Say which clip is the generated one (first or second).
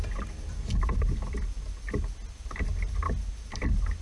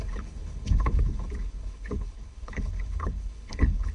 second